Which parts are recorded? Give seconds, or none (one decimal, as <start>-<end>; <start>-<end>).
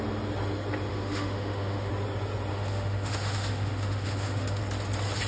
0.0-0.9; 1.9-2.5; 4.6-5.3